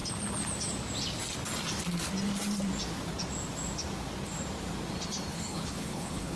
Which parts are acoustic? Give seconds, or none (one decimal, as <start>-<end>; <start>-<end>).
0.0-5.3